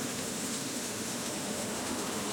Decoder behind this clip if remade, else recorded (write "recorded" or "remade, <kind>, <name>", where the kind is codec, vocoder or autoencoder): remade, autoencoder, DAC-VAE